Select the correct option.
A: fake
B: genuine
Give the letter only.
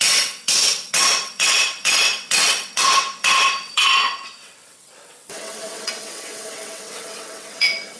A